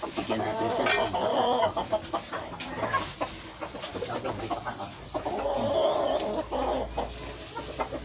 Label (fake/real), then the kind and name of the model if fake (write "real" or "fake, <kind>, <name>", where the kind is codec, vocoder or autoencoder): real